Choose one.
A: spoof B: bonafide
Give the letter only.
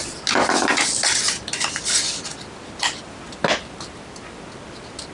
B